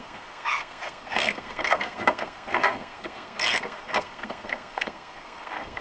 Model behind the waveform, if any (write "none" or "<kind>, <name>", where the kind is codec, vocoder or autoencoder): codec, SNAC